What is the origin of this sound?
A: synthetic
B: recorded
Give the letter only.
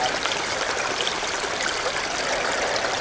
B